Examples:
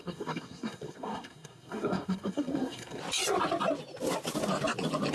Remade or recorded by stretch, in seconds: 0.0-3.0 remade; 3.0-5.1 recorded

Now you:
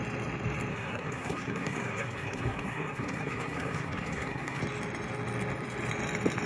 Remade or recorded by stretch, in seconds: 0.0-0.7 recorded; 0.7-4.6 remade; 4.6-6.5 recorded

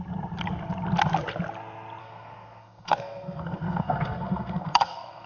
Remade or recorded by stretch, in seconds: 0.0-2.0 recorded; 2.0-5.3 remade

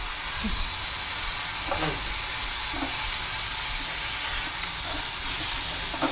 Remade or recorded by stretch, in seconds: 0.0-6.1 recorded

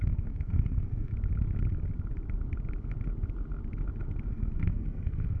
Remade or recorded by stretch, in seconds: 0.0-1.1 remade; 1.1-4.3 recorded; 4.3-5.4 remade

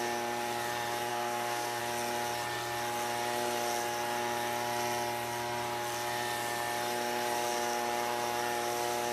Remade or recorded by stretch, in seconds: 0.0-1.1 recorded; 1.1-1.8 remade; 1.8-9.1 recorded

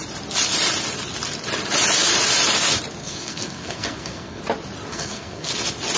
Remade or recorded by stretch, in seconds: 0.0-3.0 recorded; 3.0-4.4 remade; 4.4-4.9 recorded; 4.9-5.5 remade; 5.5-6.0 recorded

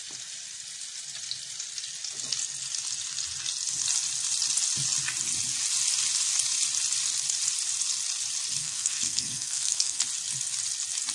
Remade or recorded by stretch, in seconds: 0.0-8.6 recorded; 8.6-10.0 remade; 10.0-11.1 recorded